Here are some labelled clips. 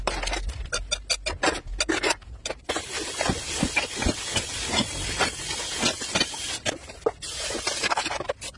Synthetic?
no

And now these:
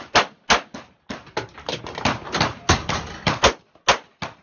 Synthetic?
no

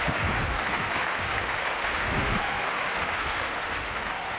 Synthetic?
yes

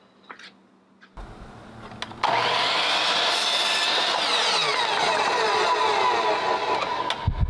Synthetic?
no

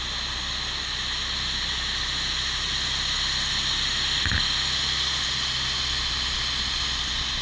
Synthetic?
no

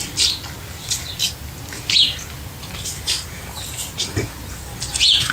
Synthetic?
no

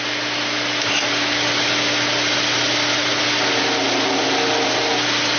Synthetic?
no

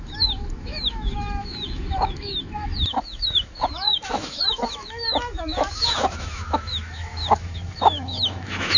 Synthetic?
yes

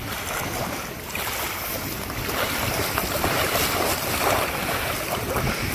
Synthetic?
no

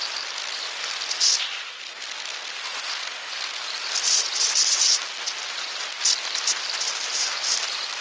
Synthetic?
no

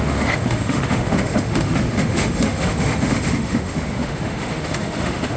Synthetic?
yes